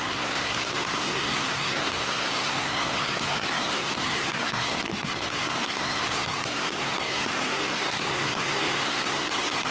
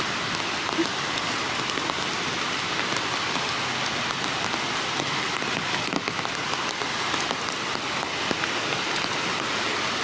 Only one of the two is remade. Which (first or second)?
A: first